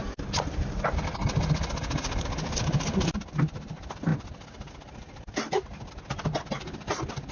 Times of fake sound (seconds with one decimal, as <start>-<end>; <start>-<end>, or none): none